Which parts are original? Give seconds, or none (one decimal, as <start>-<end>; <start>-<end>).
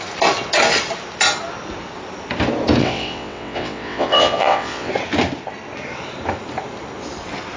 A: 0.0-2.8; 4.9-7.6